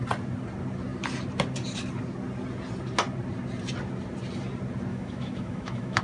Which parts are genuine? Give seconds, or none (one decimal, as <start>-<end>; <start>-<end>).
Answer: 0.0-4.9